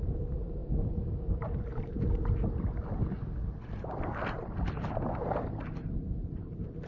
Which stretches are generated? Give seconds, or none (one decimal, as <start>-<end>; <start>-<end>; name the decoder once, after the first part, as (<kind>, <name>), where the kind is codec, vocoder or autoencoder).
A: 0.0-0.6 (vocoder, BigVGAN v2); 1.3-2.8; 6.1-6.9

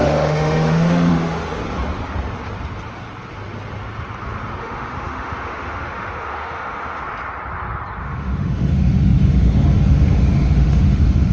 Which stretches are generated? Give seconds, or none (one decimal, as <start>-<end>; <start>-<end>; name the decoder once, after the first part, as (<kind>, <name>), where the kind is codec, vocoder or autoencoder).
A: 0.0-1.6 (autoencoder, DAC-VAE); 4.6-7.0; 8.0-11.3

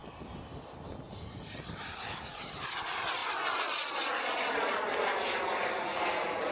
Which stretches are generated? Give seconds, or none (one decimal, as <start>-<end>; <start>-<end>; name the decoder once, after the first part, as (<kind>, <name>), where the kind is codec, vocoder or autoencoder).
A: none

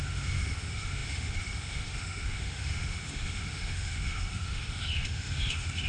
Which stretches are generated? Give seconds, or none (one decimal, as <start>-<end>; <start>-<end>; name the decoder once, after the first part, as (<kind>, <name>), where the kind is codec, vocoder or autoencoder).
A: 0.0-5.9 (autoencoder, DAC-VAE)

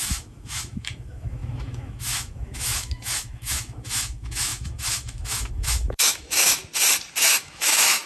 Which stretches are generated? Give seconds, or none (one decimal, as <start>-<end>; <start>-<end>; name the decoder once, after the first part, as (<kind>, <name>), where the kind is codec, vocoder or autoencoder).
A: 0.0-6.6 (autoencoder, DAC-VAE); 7.2-8.1

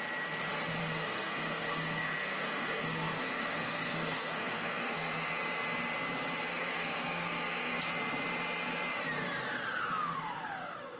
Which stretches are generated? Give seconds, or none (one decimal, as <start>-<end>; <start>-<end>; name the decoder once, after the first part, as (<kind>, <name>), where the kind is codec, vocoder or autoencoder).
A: 0.8-5.3 (codec, SNAC); 6.5-7.8

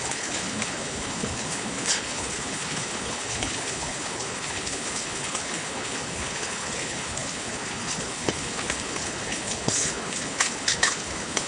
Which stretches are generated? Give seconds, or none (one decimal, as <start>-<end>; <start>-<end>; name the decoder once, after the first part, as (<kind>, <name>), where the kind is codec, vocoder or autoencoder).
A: 0.0-11.5 (codec, HILCodec)

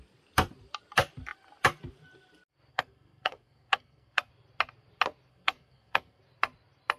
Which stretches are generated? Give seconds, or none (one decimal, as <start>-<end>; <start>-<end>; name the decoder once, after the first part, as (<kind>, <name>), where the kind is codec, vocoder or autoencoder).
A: 2.7-4.3 (codec, SNAC); 5.3-6.2